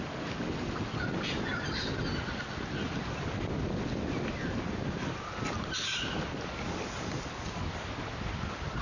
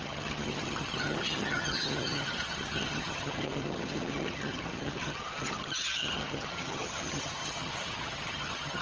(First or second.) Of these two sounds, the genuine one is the first